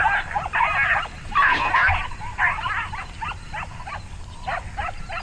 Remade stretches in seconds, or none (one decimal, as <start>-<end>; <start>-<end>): none